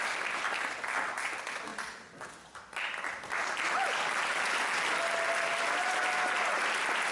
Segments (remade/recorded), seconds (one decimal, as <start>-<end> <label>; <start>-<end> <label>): 0.0-7.1 recorded